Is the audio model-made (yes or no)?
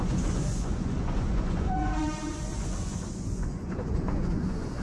yes